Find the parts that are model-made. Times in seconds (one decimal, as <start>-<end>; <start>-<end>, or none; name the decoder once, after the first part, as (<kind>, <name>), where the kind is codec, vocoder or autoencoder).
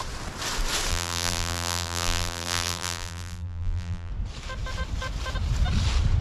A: 0.9-4.1 (vocoder, BigVGAN v2)